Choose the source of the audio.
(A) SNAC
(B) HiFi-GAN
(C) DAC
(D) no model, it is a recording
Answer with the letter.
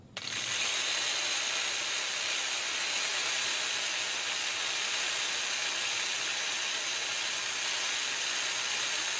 D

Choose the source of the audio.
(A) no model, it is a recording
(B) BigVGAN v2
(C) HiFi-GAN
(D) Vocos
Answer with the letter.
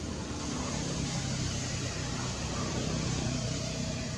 A